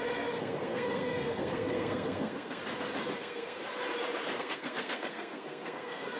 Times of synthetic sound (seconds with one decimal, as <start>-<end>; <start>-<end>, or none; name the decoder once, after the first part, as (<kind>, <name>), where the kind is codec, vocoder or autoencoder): 0.0-2.6 (codec, SNAC); 3.2-3.6; 4.4-6.2